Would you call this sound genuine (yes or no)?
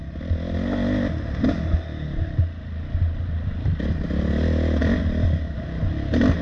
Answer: yes